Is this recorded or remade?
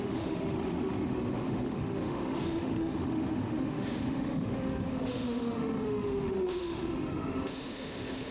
remade